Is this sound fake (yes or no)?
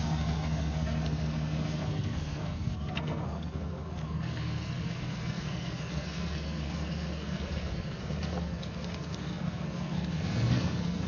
yes